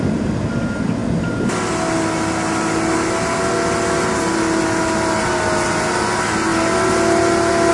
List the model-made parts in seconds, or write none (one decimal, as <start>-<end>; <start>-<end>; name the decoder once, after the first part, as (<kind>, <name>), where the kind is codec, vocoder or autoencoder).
none